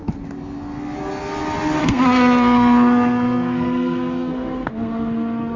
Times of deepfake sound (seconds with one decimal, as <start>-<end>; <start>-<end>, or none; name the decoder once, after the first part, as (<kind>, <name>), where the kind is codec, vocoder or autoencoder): 1.8-5.6 (codec, SNAC)